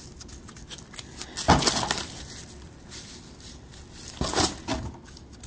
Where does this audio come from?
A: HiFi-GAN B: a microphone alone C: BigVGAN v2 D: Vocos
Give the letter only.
B